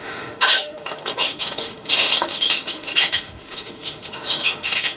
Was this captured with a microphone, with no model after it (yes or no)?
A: no